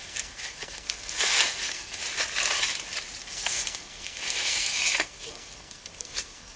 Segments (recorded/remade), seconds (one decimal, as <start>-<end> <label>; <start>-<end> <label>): 0.0-2.0 remade; 2.0-3.2 recorded; 3.2-6.6 remade